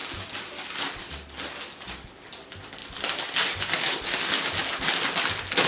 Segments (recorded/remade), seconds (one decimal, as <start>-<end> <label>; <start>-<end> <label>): 0.0-1.1 remade; 1.1-2.8 recorded; 2.8-4.6 remade; 4.6-5.7 recorded